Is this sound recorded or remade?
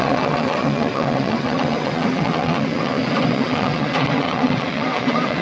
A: remade